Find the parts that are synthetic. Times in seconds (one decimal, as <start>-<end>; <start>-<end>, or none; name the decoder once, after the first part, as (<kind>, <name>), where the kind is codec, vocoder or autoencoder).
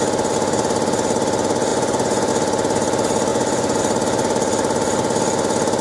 1.7-2.3 (vocoder, Vocos); 3.3-3.8